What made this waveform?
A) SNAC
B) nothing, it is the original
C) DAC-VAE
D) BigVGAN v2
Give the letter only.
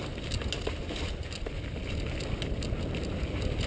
B